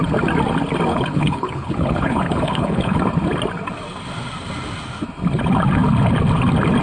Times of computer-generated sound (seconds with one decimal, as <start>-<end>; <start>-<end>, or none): 0.9-3.0